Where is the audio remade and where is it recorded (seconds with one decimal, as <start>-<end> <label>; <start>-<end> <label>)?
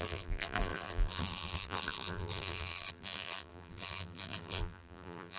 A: 0.0-5.4 remade